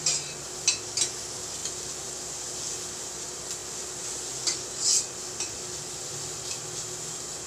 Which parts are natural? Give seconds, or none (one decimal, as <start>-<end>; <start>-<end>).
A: 0.0-7.5